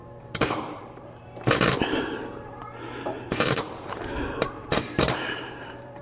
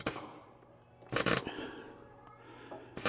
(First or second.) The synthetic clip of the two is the first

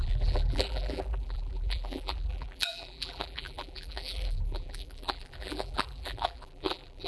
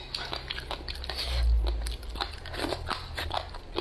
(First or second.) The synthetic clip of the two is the first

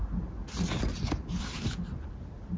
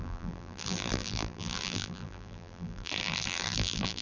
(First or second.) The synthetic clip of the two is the second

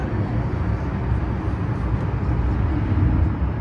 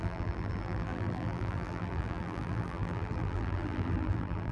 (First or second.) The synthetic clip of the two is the second